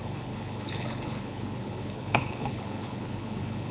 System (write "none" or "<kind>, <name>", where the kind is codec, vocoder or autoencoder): codec, HILCodec